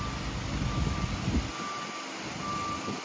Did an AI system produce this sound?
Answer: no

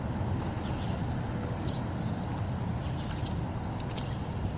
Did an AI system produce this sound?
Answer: no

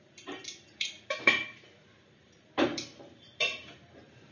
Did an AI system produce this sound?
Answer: yes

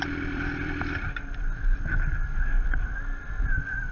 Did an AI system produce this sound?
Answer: yes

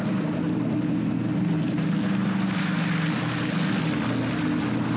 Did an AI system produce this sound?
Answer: no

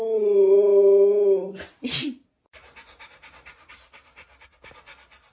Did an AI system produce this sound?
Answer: no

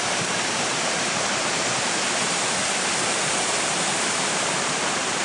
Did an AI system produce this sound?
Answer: yes